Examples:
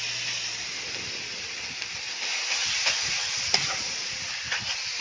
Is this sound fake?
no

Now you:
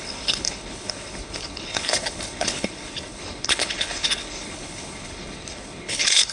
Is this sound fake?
yes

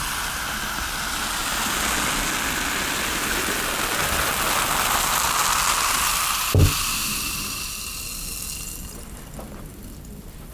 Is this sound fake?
no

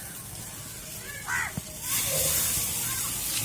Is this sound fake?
no